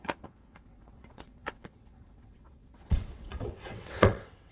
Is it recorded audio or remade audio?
remade